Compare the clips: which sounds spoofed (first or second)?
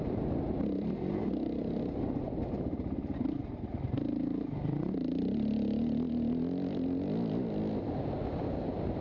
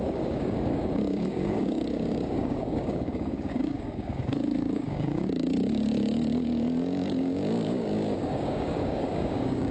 second